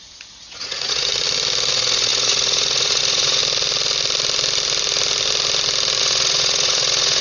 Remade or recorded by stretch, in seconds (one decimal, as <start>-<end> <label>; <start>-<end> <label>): 0.0-1.1 remade; 1.1-1.7 recorded; 1.7-3.4 remade; 3.4-6.0 recorded; 6.0-7.2 remade